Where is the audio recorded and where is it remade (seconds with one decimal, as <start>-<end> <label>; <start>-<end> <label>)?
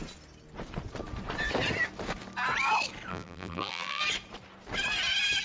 0.0-3.1 recorded; 3.1-4.0 remade; 4.0-5.4 recorded